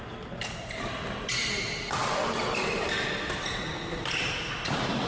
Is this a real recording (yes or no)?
yes